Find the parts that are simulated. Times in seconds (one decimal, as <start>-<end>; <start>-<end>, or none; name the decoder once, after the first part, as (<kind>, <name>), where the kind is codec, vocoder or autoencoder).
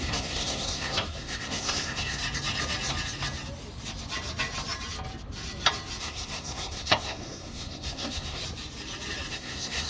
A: 0.0-2.2 (codec, SNAC); 6.0-8.4; 9.3-9.9